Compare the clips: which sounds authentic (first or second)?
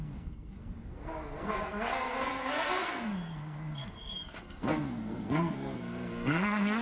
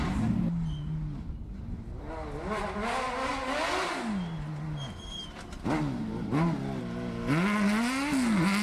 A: second